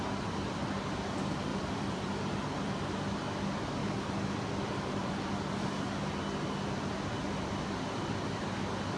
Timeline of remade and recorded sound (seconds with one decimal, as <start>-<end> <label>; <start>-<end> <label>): 0.0-1.5 recorded; 1.5-2.3 remade; 2.3-3.8 recorded; 3.8-5.3 remade; 5.3-9.0 recorded